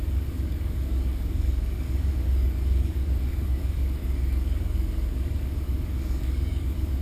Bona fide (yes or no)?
no